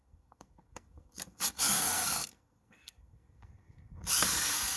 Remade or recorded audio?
remade